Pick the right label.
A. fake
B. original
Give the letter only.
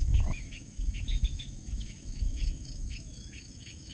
A